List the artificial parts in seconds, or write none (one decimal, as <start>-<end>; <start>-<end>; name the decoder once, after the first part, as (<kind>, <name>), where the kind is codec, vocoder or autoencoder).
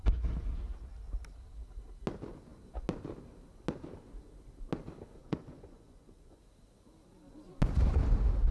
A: 5.2-6.4 (vocoder, Vocos)